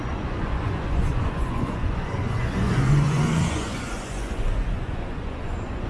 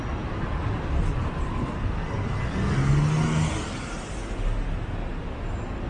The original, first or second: second